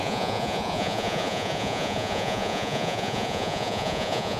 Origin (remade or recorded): remade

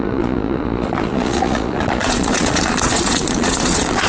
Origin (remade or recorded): remade